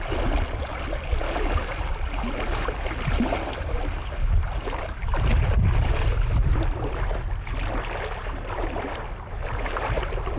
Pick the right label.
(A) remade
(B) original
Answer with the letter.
B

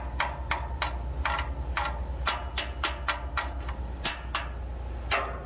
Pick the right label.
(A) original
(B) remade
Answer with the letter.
A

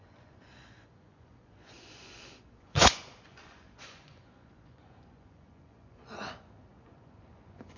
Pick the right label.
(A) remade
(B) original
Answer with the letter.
A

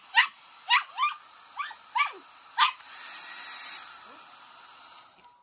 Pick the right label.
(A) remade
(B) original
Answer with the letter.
B